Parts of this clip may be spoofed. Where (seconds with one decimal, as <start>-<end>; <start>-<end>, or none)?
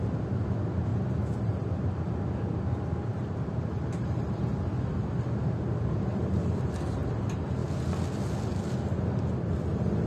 0.9-2.2; 3.1-4.4